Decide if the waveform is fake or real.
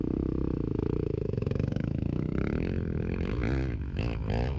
fake